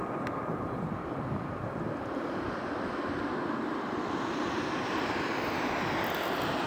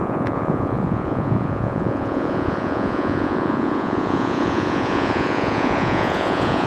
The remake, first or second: second